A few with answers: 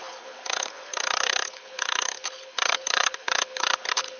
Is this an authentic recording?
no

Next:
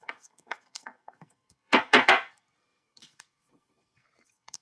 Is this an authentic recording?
no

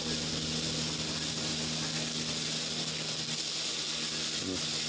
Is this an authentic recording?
yes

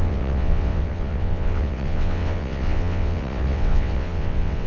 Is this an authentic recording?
no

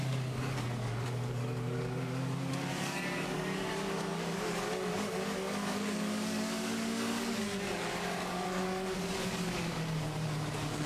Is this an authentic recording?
no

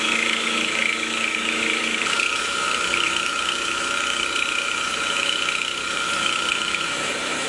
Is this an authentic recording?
no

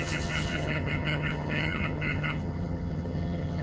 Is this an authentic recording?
no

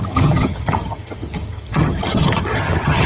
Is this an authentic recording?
no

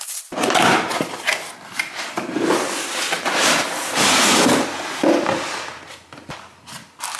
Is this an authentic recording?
yes